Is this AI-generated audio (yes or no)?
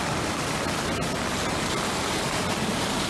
no